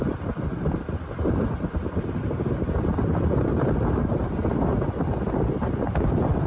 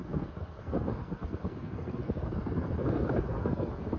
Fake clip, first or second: second